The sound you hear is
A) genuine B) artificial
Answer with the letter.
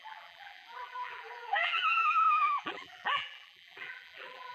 B